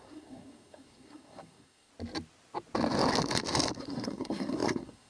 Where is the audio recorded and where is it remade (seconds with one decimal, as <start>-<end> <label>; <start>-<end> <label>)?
0.0-1.9 remade; 1.9-3.8 recorded; 3.8-5.1 remade

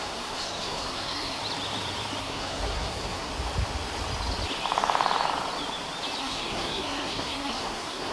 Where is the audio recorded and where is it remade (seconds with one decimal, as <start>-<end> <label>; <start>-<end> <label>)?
0.0-1.4 remade; 1.4-2.2 recorded; 2.2-3.3 remade; 3.3-6.2 recorded; 6.2-8.1 remade

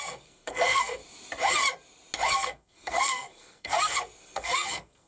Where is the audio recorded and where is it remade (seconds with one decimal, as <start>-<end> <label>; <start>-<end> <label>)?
0.0-1.0 remade; 1.0-2.3 recorded; 2.3-5.1 remade

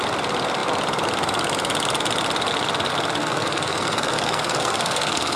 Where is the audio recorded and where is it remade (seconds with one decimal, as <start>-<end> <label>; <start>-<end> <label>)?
0.0-3.2 recorded; 3.2-5.4 remade

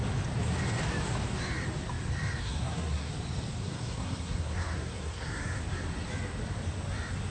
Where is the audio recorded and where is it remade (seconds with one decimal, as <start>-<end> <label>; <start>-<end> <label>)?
0.0-2.4 recorded; 2.4-3.1 remade; 3.1-3.6 recorded; 3.6-5.6 remade; 5.6-7.3 recorded

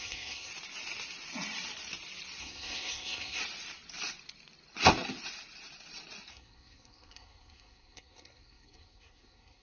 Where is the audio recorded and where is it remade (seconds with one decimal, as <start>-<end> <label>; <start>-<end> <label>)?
0.0-0.5 remade; 0.5-2.4 recorded; 2.4-3.4 remade; 3.4-6.3 recorded; 6.3-9.6 remade

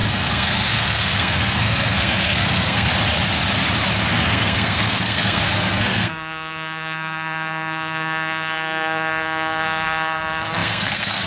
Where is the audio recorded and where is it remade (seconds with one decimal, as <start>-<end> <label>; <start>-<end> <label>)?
0.0-2.9 remade; 2.9-4.1 recorded; 4.1-11.3 remade